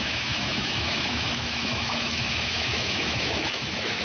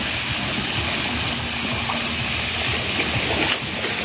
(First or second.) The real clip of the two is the second